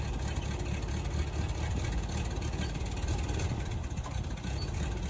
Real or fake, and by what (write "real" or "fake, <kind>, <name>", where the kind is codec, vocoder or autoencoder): real